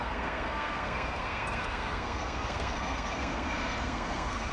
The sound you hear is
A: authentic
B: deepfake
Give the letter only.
B